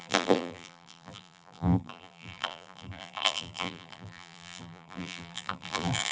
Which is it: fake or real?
fake